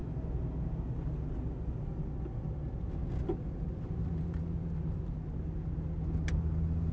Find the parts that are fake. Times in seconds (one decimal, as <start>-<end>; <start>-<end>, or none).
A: none

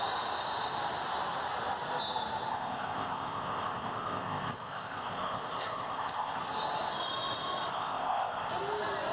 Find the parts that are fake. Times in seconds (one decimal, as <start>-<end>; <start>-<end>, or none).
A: 2.5-6.4; 7.7-8.5

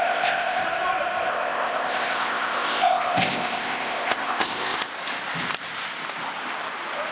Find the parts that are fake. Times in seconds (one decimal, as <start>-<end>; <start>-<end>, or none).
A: 0.0-0.6; 1.3-4.9

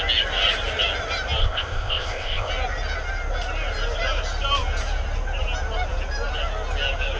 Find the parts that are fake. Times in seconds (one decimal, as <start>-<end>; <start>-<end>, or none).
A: 1.4-2.5

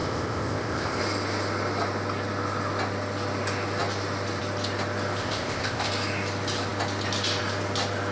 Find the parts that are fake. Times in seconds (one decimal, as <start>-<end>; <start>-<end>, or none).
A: 0.0-1.0; 5.2-5.9